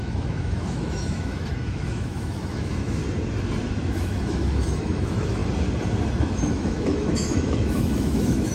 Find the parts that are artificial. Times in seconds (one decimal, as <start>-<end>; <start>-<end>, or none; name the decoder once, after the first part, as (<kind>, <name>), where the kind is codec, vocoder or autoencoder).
0.0-3.0 (autoencoder, DAC-VAE); 3.8-5.4; 6.2-8.5